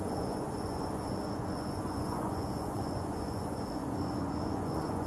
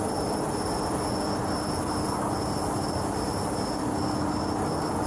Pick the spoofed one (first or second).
first